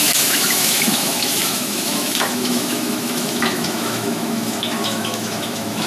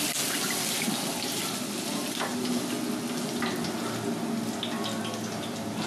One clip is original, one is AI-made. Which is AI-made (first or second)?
first